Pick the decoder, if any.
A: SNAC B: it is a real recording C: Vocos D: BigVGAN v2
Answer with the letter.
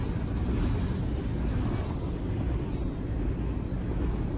B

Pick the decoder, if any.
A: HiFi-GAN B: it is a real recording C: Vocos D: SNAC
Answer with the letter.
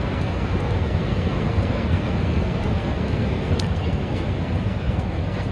D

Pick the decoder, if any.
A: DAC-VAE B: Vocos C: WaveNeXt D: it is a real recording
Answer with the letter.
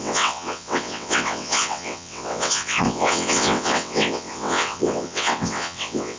C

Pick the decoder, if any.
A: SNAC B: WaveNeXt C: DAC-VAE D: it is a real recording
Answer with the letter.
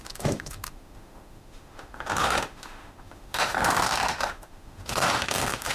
C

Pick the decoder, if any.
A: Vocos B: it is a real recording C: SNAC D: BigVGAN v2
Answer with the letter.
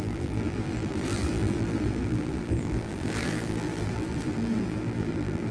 D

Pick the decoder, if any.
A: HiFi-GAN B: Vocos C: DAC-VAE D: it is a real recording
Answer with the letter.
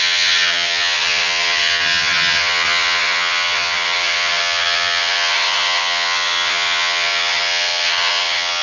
A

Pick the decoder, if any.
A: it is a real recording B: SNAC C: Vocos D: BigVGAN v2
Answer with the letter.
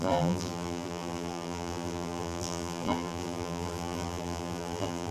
D